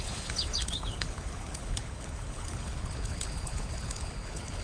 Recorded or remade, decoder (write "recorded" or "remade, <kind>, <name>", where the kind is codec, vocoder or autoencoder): remade, codec, HILCodec